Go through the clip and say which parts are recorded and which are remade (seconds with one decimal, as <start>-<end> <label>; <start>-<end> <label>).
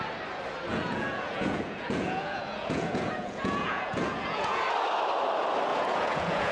0.0-0.7 recorded; 0.7-4.6 remade; 4.6-5.7 recorded; 5.7-6.5 remade